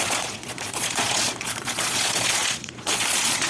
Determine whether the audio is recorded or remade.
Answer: remade